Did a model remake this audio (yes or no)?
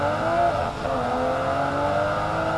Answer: no